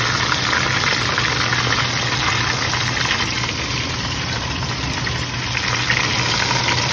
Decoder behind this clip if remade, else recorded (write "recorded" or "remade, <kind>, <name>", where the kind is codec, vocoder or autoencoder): recorded